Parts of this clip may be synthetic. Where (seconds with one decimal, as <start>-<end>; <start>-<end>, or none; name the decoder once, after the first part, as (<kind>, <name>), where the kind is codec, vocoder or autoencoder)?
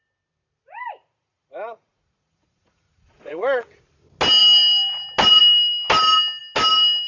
1.0-3.8 (vocoder, Vocos)